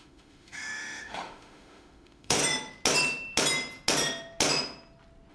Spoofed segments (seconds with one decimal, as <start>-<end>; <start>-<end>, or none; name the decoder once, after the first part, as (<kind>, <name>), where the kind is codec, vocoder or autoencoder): 0.0-2.4 (autoencoder, DAC-VAE)

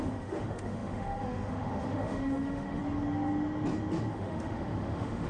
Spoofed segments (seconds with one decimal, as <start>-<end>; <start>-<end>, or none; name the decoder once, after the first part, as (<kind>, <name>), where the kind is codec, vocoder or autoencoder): 0.0-2.8 (autoencoder, DAC-VAE); 4.1-5.3

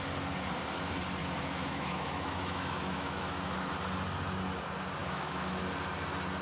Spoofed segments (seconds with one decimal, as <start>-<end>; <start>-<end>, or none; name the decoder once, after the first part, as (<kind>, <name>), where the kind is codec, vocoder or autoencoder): 1.2-3.7 (autoencoder, DAC-VAE); 5.0-5.6